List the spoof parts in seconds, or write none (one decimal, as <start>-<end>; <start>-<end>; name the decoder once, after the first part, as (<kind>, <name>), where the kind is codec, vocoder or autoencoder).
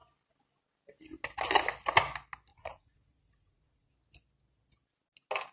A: 2.5-3.9 (vocoder, Vocos)